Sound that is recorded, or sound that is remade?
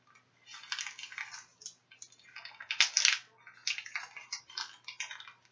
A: recorded